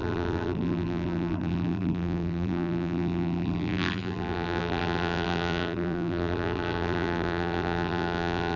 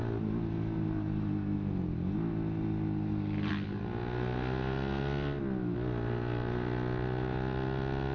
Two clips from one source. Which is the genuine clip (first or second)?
second